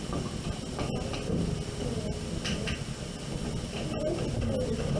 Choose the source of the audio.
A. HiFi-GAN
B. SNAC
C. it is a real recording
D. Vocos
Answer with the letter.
C